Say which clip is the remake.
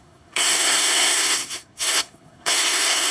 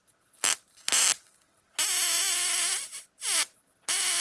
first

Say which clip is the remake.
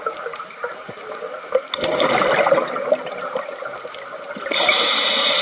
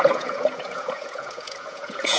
second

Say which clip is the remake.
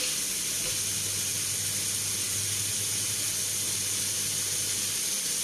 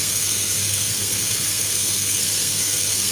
second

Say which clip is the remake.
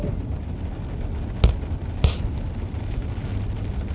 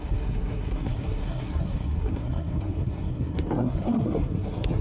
second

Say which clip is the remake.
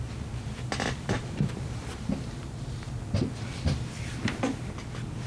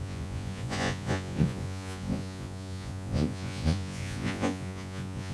second